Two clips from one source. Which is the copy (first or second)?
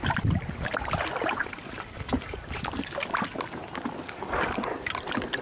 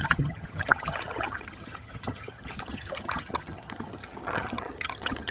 second